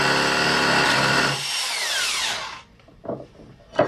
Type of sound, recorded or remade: recorded